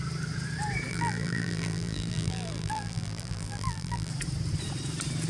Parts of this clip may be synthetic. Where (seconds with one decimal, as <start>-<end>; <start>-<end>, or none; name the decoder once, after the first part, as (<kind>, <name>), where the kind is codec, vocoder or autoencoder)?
0.9-4.1 (vocoder, BigVGAN v2)